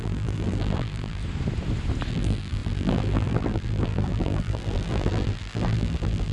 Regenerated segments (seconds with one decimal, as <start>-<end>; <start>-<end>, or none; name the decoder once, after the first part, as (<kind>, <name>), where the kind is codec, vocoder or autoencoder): 0.0-1.2 (vocoder, BigVGAN v2); 2.1-6.3